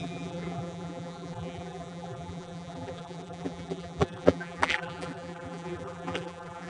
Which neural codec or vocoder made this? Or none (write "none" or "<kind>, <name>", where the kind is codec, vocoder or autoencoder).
vocoder, BigVGAN v2